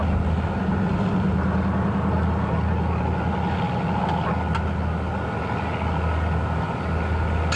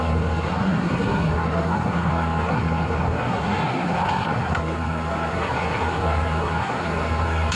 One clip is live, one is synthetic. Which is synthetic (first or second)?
second